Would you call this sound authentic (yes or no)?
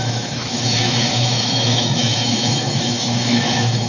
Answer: no